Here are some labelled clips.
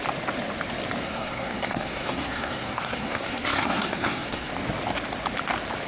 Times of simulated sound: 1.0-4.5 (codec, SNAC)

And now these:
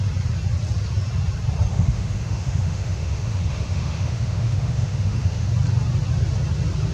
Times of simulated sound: 1.7-5.5 (autoencoder, DAC-VAE)